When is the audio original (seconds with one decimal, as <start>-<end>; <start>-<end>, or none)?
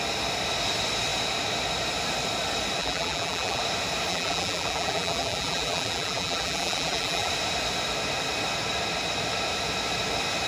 0.0-2.8; 3.6-4.1; 7.3-10.5